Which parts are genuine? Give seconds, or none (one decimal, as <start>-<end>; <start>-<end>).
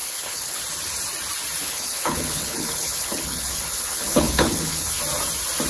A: 0.6-1.6; 5.0-5.7